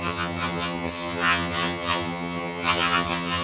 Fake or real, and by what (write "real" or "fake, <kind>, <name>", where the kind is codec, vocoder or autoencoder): fake, vocoder, HiFi-GAN